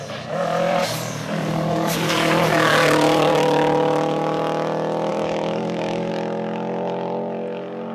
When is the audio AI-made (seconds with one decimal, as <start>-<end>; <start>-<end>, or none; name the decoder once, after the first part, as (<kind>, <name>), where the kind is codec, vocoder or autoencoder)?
0.8-4.4 (codec, DAC); 5.1-6.1

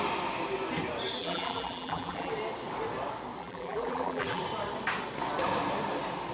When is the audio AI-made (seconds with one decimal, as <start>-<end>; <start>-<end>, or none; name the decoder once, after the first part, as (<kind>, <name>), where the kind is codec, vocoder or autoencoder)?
1.2-2.3 (vocoder, BigVGAN v2); 3.4-4.4

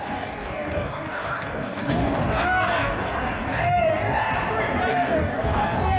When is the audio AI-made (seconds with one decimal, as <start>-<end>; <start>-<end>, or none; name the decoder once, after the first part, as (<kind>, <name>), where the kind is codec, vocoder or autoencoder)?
0.0-4.3 (codec, DAC); 4.9-6.0